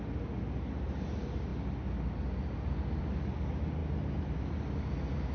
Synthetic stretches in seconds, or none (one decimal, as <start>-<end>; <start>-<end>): none

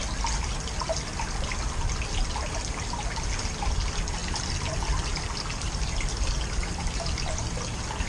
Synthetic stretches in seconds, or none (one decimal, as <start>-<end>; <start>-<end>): none

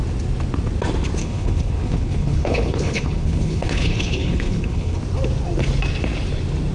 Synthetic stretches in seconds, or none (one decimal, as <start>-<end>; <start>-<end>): 1.2-5.0

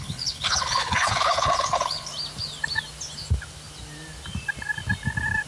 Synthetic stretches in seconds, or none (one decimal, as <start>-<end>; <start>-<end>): 0.0-2.1

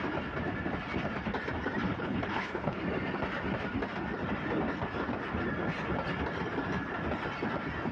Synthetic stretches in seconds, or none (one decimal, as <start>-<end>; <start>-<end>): 1.9-2.8